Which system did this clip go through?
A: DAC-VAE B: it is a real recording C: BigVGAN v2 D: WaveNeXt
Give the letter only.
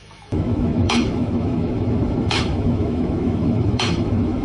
A